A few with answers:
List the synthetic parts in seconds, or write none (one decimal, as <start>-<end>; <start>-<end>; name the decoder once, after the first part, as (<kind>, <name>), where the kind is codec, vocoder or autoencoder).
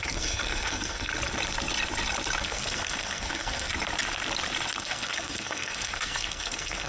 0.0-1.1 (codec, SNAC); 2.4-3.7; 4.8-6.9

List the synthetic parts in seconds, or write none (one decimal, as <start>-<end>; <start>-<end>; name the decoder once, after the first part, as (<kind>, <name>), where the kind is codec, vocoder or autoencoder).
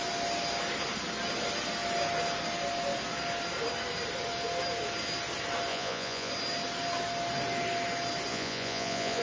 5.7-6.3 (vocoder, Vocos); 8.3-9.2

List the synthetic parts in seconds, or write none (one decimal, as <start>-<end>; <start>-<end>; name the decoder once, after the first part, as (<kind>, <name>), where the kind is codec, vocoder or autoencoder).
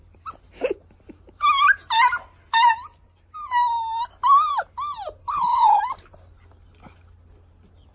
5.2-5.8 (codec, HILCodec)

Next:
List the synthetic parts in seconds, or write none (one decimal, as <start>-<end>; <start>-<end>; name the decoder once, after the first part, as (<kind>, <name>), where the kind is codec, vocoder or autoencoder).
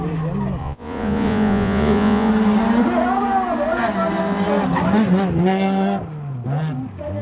0.6-2.3 (vocoder, Vocos)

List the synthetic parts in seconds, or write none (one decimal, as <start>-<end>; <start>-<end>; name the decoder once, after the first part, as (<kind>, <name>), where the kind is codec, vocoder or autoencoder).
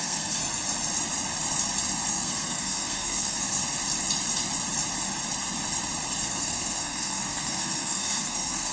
0.0-0.4 (codec, SNAC); 2.1-3.6; 6.2-8.7